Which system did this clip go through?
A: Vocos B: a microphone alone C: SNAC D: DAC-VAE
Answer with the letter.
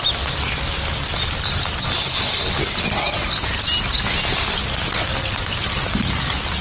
B